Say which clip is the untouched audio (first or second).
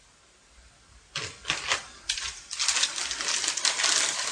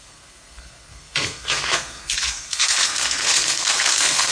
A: first